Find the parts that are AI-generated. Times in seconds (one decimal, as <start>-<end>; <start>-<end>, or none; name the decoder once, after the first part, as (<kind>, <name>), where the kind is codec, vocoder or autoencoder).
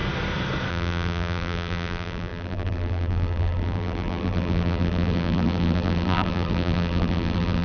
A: 0.7-7.6 (vocoder, BigVGAN v2)